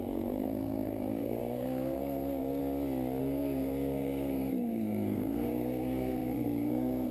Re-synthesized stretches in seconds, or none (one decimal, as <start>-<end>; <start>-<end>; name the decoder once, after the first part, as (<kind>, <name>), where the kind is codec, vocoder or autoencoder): 0.0-2.6 (codec, SNAC); 3.2-7.1